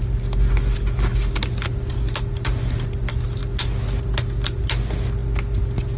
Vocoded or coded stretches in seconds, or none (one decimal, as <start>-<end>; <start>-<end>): none